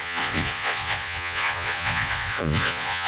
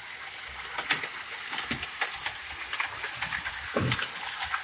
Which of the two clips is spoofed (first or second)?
first